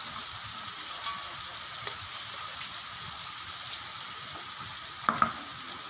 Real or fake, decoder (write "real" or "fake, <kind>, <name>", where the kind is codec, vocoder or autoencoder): real